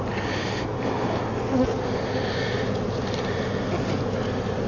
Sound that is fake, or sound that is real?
real